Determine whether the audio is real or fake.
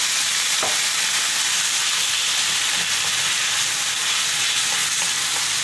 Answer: real